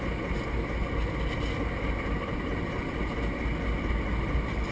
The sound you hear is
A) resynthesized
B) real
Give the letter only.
B